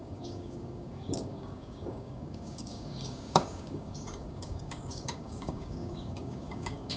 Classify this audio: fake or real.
fake